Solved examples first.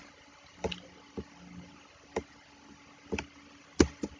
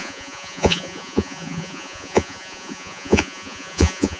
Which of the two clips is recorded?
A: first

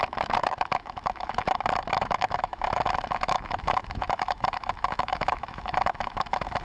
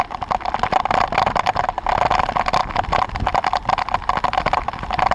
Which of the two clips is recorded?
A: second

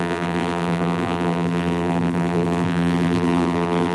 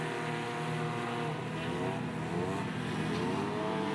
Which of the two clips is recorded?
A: second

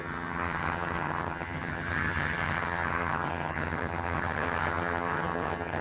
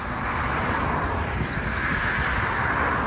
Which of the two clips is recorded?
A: second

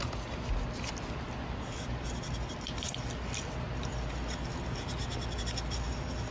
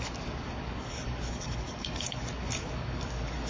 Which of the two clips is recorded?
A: first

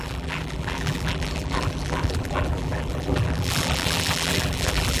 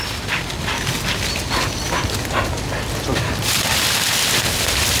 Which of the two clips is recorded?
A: second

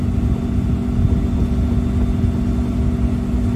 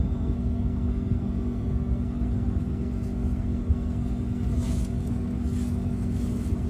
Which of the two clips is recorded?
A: first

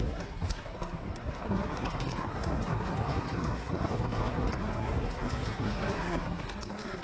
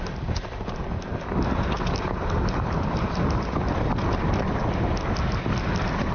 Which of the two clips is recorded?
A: second